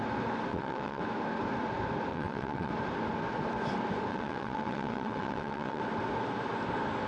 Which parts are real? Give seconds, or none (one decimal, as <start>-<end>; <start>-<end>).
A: 0.0-0.5; 1.0-2.1; 2.7-4.1; 5.8-7.1